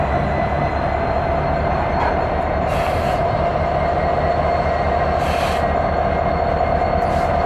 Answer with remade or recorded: recorded